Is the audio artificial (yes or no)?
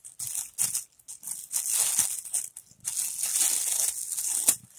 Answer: no